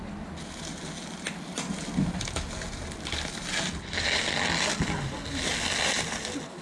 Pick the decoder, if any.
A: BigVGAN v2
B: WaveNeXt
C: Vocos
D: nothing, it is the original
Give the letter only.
D